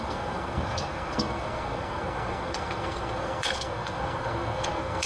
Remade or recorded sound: remade